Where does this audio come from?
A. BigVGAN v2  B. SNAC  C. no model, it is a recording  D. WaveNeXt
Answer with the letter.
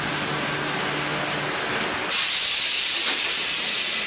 C